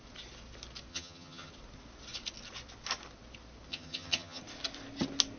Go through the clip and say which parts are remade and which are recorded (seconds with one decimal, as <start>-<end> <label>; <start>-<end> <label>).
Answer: 0.0-0.9 recorded; 0.9-1.5 remade; 1.5-3.7 recorded; 3.7-4.4 remade; 4.4-5.4 recorded